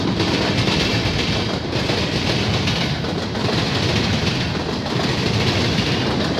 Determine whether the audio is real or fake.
fake